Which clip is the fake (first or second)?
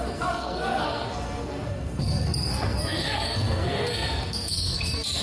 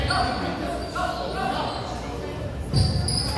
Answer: first